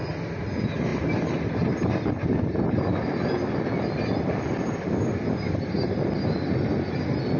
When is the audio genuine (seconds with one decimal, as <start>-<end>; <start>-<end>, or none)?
0.0-7.4